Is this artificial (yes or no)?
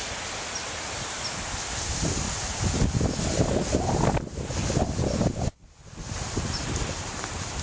no